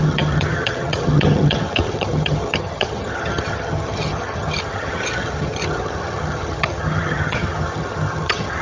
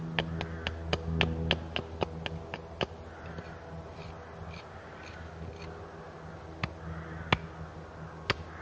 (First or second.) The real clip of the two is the second